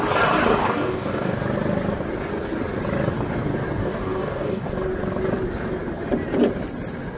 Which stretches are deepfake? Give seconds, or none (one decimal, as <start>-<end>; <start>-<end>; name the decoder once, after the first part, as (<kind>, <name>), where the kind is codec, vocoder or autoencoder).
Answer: 0.6-1.4 (codec, DAC); 3.8-4.7